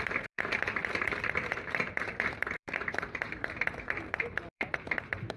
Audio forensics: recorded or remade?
remade